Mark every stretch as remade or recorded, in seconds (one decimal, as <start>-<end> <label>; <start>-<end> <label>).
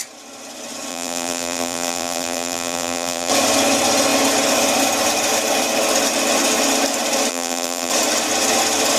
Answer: 0.0-0.9 recorded; 0.9-3.3 remade; 3.3-7.3 recorded; 7.3-7.9 remade; 7.9-9.0 recorded